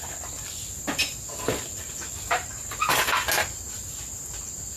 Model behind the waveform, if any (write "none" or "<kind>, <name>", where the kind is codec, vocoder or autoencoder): none